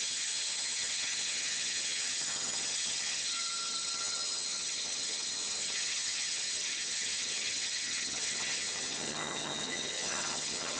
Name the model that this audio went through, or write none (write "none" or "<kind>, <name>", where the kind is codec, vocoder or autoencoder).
vocoder, HiFi-GAN